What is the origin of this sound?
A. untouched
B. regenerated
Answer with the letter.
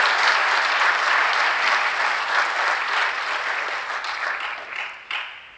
A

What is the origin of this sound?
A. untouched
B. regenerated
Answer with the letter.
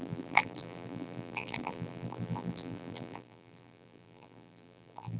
B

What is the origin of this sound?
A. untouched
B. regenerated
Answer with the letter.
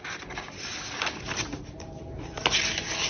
A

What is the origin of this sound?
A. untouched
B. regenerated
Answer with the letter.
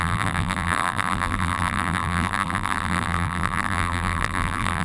B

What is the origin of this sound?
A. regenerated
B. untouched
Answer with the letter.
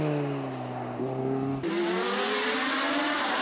B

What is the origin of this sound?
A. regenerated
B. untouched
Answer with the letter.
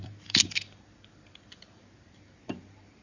A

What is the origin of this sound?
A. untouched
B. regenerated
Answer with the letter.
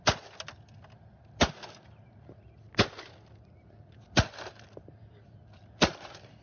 A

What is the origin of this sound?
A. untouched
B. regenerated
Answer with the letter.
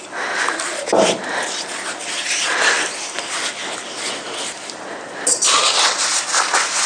A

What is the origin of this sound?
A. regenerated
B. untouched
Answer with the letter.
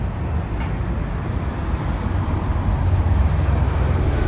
B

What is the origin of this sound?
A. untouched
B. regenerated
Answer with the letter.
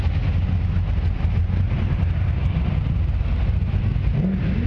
A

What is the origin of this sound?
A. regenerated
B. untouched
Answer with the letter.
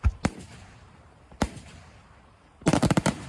A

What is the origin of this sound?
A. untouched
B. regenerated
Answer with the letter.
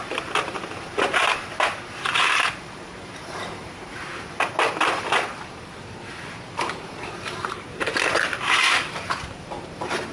B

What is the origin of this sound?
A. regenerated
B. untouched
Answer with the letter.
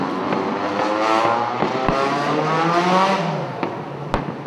B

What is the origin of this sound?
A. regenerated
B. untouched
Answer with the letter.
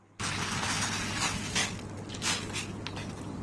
B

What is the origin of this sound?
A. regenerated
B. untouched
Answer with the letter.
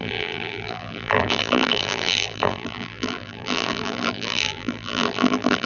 A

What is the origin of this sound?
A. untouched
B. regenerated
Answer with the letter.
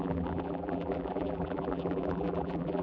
B